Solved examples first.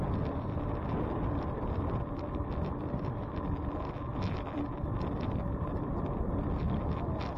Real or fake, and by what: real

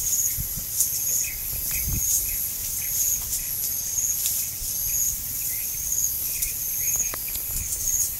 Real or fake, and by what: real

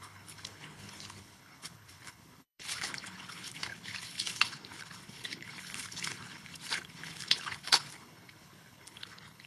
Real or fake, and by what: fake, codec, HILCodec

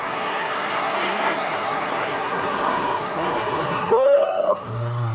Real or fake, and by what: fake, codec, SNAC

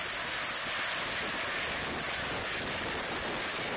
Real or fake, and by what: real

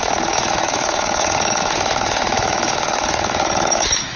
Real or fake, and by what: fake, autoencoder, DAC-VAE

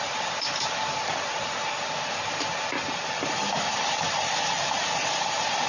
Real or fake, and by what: real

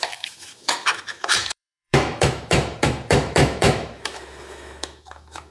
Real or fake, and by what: fake, autoencoder, DAC-VAE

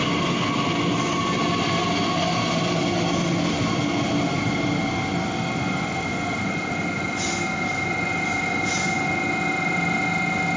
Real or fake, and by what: real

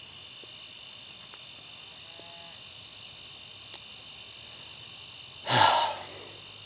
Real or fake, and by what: real